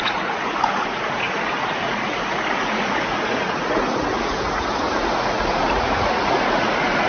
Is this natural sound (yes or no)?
no